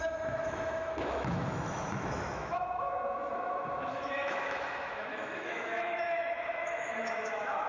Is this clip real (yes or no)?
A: no